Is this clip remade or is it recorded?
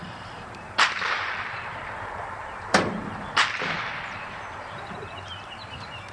remade